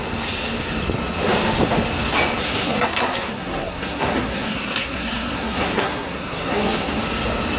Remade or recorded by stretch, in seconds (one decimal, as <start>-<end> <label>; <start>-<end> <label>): 0.0-2.4 recorded; 2.4-7.0 remade; 7.0-7.6 recorded